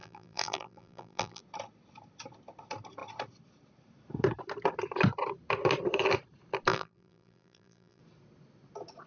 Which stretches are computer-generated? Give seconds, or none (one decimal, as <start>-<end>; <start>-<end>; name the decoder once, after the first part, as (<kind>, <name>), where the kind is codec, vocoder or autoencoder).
0.0-1.4 (vocoder, BigVGAN v2); 6.7-8.0